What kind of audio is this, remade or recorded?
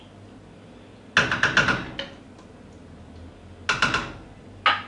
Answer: recorded